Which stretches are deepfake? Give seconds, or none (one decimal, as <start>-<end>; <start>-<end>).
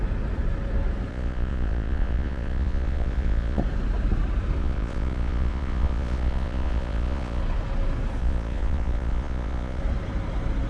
1.1-3.6; 4.6-7.4; 8.2-9.8